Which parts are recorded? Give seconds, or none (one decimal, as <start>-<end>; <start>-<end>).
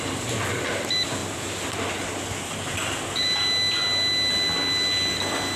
0.0-5.6